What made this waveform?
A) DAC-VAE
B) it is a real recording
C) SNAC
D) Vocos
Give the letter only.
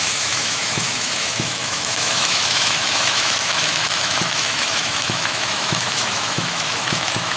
A